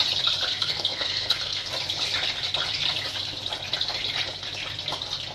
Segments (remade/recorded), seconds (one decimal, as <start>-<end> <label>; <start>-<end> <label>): 0.0-0.6 recorded; 0.6-1.7 remade; 1.7-5.3 recorded